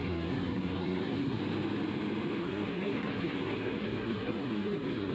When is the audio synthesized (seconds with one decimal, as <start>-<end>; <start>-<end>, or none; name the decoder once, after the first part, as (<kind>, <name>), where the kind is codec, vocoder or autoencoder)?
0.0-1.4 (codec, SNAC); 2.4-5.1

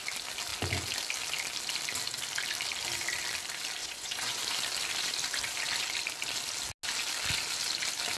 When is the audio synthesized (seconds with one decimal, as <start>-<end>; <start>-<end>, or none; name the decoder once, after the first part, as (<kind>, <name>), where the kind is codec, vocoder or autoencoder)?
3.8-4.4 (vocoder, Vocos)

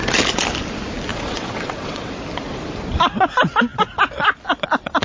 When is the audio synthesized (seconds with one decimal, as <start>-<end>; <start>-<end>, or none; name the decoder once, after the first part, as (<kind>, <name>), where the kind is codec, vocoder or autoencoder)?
1.1-2.1 (vocoder, WaveNeXt)

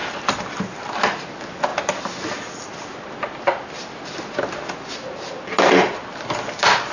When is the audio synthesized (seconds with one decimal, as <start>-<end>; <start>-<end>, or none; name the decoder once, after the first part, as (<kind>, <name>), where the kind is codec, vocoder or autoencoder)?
none

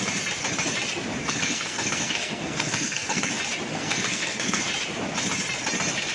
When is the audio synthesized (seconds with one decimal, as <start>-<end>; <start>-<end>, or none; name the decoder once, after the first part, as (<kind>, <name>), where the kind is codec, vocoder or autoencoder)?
1.2-3.3 (codec, SNAC); 3.7-4.6

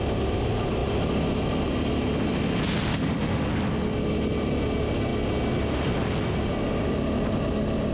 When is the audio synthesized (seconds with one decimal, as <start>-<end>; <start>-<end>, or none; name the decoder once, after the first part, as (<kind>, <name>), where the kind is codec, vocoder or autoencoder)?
2.9-3.5 (autoencoder, DAC-VAE)

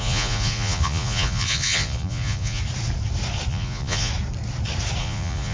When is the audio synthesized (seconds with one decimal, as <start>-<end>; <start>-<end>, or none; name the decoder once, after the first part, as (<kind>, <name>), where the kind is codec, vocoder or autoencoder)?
0.0-2.6 (vocoder, Vocos); 3.5-4.1; 5.0-5.5

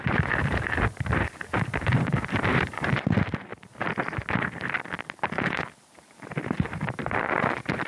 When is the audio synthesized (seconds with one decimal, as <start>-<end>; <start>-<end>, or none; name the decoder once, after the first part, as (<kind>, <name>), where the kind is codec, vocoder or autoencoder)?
0.0-3.5 (vocoder, BigVGAN v2); 5.0-7.9